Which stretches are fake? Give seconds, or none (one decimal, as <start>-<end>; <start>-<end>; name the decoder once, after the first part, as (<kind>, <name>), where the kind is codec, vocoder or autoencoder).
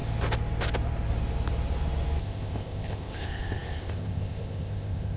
2.2-5.2 (codec, ZipCodec)